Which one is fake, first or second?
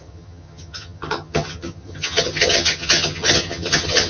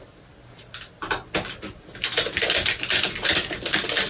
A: first